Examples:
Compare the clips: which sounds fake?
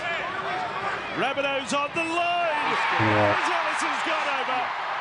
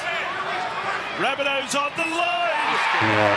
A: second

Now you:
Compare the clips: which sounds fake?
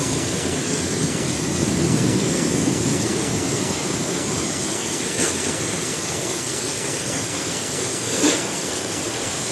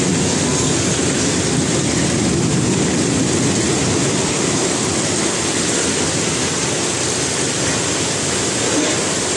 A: first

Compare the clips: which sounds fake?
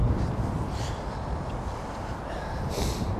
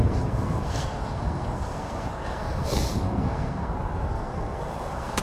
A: second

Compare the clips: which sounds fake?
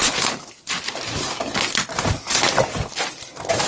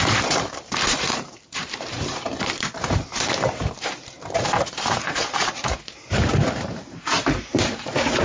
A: second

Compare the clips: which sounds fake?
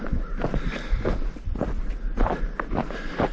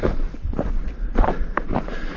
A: second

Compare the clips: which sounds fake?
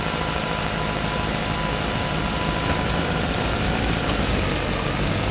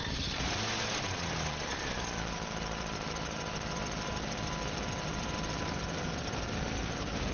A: second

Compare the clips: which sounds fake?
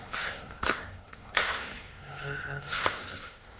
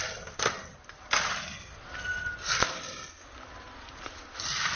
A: first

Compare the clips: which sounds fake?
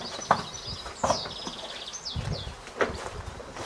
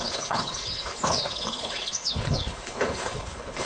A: second